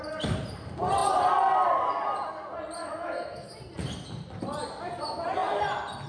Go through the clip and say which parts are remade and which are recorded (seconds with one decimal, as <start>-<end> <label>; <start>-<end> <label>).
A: 0.0-2.8 recorded; 2.8-3.6 remade; 3.6-6.1 recorded